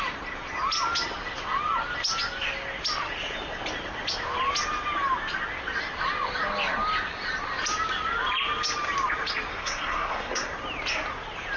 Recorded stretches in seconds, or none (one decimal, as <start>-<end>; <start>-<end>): 0.0-9.5; 10.5-11.6